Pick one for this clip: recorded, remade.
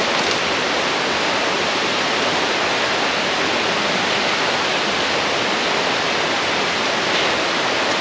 recorded